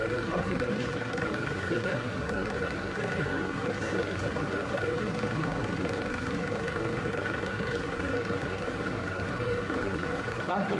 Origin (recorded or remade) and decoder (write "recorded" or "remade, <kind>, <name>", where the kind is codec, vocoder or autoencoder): remade, codec, SNAC